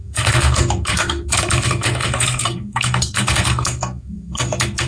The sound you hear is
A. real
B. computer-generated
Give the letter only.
B